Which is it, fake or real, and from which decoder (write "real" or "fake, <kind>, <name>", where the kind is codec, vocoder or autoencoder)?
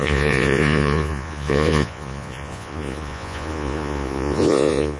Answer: fake, vocoder, Vocos